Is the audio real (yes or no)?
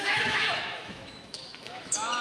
no